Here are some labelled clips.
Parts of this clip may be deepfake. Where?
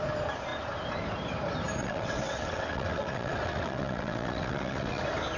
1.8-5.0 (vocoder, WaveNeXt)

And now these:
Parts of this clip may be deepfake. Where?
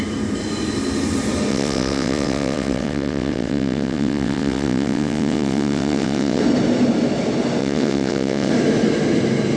1.5-6.4 (vocoder, WaveNeXt); 7.6-8.5